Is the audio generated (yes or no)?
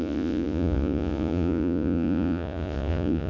yes